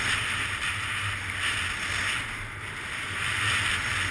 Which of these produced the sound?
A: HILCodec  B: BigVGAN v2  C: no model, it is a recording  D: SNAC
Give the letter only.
C